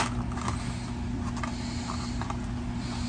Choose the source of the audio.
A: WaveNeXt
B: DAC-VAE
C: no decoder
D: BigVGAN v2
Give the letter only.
C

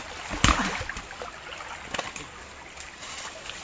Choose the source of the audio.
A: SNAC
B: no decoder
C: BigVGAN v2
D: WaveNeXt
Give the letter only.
B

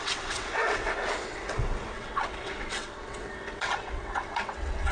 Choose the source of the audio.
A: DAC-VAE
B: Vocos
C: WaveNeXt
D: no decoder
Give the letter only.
C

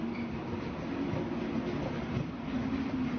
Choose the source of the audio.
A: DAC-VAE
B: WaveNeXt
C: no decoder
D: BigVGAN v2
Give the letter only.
C